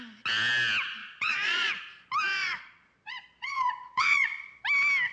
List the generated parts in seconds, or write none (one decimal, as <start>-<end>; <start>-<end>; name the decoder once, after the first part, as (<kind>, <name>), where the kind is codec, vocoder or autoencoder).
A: 1.0-1.7 (vocoder, Vocos); 2.4-4.6